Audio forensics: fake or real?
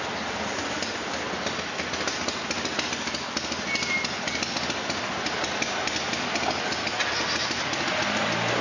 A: real